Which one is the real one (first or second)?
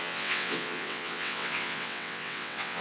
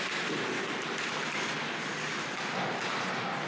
second